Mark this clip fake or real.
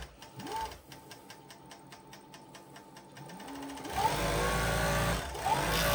real